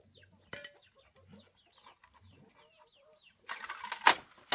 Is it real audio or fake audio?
real